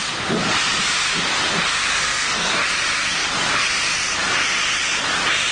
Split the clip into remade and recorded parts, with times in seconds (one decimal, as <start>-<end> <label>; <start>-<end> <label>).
0.0-1.9 recorded; 1.9-2.6 remade; 2.6-5.5 recorded